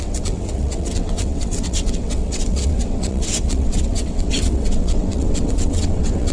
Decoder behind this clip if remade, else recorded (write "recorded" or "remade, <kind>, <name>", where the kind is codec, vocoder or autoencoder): remade, vocoder, WaveNeXt